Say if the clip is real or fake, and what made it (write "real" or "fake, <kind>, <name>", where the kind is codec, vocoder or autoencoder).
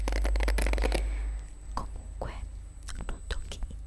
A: real